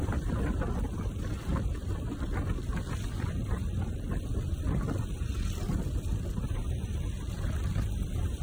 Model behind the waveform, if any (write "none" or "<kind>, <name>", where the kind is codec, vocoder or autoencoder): vocoder, BigVGAN v2